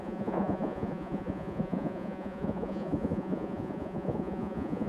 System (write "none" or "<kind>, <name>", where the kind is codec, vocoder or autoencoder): vocoder, Vocos